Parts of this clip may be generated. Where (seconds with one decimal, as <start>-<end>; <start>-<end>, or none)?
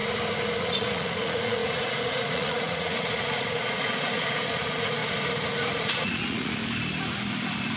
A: 0.6-5.0; 5.8-6.6